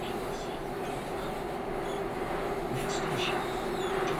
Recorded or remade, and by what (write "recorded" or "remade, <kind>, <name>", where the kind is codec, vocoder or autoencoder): recorded